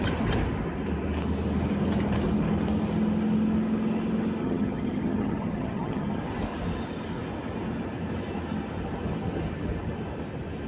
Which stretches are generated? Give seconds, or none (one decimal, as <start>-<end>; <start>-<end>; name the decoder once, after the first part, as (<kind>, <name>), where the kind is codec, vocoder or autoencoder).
4.4-6.2 (vocoder, HiFi-GAN)